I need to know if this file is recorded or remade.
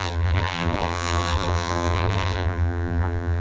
remade